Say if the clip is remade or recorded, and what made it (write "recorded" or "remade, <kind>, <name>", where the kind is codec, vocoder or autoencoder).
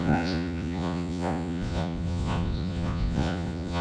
remade, vocoder, Vocos